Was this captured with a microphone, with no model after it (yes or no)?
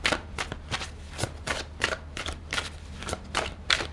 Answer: no